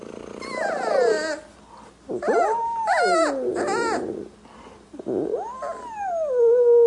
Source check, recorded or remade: recorded